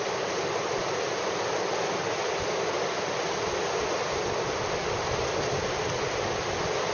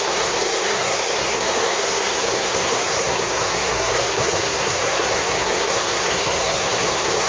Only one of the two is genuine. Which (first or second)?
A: first